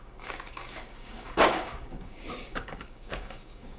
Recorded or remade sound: remade